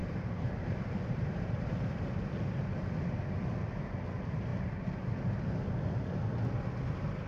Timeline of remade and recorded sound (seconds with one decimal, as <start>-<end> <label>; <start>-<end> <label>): 0.0-2.1 remade; 2.1-7.3 recorded